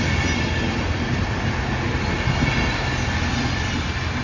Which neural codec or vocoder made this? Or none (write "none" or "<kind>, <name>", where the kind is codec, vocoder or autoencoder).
none